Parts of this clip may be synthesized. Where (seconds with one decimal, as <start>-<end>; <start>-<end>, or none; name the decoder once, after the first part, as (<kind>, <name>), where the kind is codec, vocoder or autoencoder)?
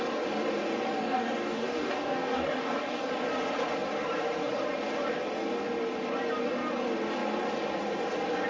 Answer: 1.0-3.1 (codec, DAC)